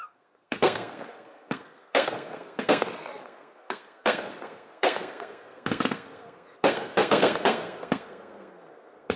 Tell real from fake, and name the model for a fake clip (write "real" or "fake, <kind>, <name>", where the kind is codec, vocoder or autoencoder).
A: fake, codec, SNAC